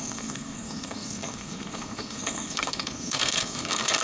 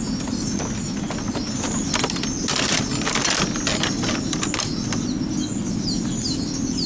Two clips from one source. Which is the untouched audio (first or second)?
second